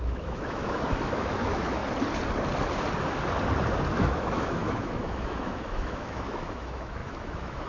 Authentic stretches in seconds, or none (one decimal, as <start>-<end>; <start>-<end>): 1.8-3.9